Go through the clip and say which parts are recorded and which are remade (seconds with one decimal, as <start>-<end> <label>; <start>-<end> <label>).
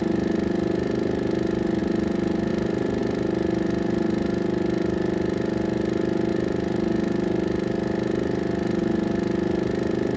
0.0-10.2 recorded